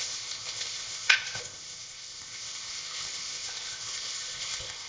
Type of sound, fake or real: fake